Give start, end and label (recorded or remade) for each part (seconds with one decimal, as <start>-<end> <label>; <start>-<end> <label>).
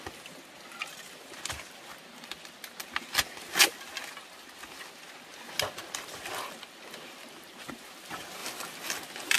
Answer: 0.0-9.4 recorded